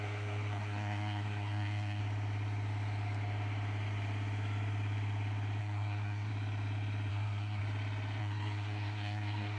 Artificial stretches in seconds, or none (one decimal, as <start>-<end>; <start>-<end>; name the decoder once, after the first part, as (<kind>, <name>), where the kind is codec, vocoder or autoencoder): 0.0-2.0 (codec, SNAC); 5.6-6.3; 7.1-7.6; 8.2-9.6